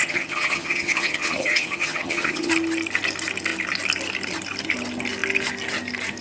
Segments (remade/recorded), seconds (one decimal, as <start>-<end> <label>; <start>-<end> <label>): 0.0-2.5 remade; 2.5-6.2 recorded